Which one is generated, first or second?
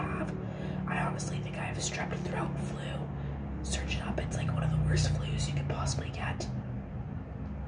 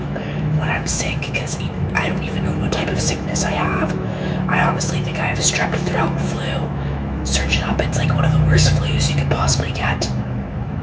second